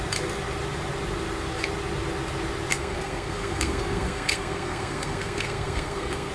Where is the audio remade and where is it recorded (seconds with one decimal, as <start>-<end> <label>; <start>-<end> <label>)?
0.0-2.7 recorded; 2.7-6.3 remade